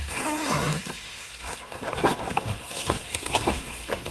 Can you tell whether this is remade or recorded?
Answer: remade